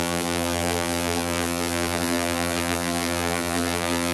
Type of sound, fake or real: fake